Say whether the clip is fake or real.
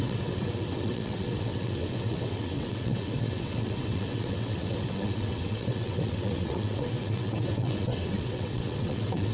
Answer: fake